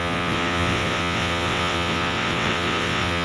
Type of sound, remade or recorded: remade